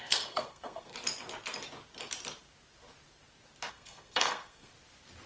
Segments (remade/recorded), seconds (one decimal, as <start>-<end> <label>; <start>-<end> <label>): 0.0-0.9 remade; 0.9-3.7 recorded; 3.7-4.7 remade; 4.7-5.3 recorded

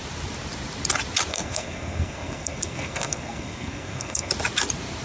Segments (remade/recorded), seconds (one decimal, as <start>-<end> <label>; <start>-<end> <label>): 0.0-1.3 recorded; 1.3-4.3 remade; 4.3-5.0 recorded

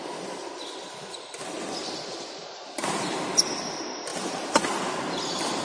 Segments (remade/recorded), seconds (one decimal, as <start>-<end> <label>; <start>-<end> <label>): 0.0-5.6 recorded

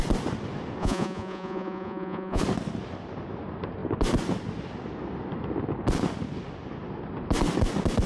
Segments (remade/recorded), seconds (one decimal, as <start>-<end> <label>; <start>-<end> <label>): 0.0-0.8 recorded; 0.8-2.4 remade; 2.4-8.1 recorded

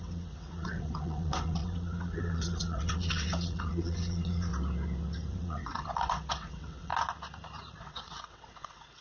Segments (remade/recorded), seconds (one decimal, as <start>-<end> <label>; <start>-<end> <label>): 0.0-4.5 remade; 4.5-5.3 recorded; 5.3-6.9 remade; 6.9-7.8 recorded; 7.8-9.0 remade

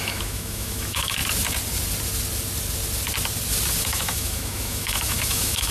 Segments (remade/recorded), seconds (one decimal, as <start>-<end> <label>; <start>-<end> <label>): 0.0-1.2 remade; 1.2-3.8 recorded; 3.8-5.7 remade

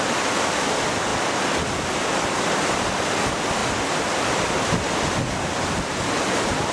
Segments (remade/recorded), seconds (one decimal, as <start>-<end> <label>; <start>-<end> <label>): 0.0-6.7 recorded

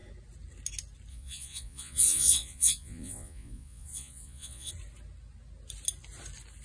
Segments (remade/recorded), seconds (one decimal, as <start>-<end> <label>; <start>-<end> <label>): 0.0-1.1 recorded; 1.1-4.7 remade; 4.7-6.6 recorded